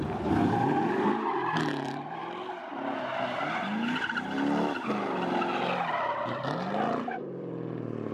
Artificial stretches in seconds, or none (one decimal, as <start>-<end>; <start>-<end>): 0.0-2.2; 6.1-8.1